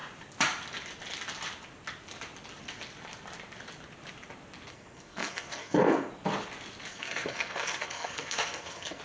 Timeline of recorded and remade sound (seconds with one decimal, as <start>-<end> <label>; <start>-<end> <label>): 0.0-4.7 recorded; 4.7-6.1 remade; 6.1-6.9 recorded; 6.9-9.0 remade

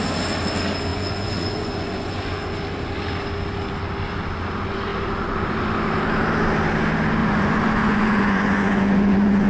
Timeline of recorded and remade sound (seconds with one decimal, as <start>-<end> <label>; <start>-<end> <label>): 0.0-0.9 recorded; 0.9-2.6 remade; 2.6-7.2 recorded; 7.2-9.5 remade

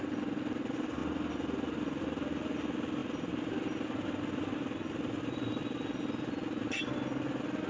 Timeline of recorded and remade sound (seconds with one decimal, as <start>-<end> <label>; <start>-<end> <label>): 0.0-7.7 recorded

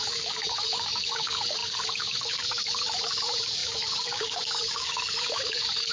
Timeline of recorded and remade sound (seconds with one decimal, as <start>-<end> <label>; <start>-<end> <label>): 0.0-5.9 remade

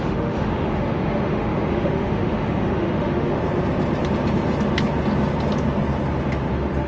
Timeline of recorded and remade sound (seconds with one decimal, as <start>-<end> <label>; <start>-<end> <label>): 0.0-3.4 remade; 3.4-6.5 recorded; 6.5-6.9 remade

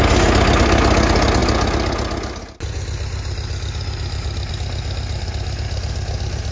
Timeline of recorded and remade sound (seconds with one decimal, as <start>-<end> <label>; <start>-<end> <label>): 0.0-6.5 recorded

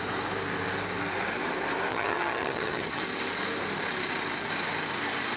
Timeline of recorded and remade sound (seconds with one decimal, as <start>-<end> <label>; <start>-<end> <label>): 0.0-1.9 recorded; 1.9-3.0 remade; 3.0-5.4 recorded

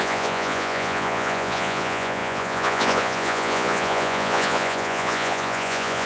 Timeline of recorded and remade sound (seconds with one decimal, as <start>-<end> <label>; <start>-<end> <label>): 0.0-6.1 remade